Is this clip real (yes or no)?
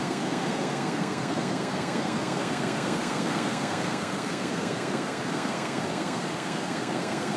no